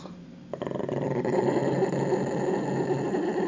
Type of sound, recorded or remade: recorded